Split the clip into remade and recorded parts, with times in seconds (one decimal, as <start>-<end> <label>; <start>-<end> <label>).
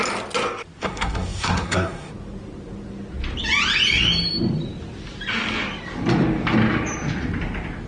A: 0.0-0.8 recorded; 0.8-2.1 remade; 2.1-7.9 recorded